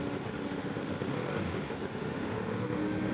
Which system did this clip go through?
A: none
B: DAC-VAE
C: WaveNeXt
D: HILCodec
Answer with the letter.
B